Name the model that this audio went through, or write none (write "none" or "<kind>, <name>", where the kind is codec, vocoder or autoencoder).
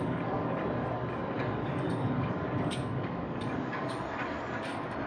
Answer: codec, DAC